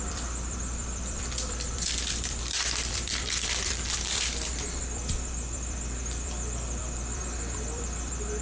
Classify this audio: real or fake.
fake